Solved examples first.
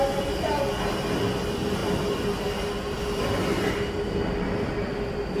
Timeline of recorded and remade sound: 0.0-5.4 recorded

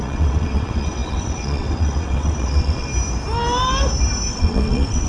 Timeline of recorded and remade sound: 0.0-2.9 remade; 2.9-4.3 recorded; 4.3-5.1 remade

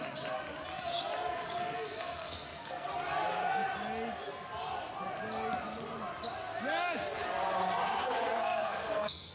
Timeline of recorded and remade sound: 0.0-1.3 recorded; 1.3-2.9 remade; 2.9-8.0 recorded; 8.0-9.3 remade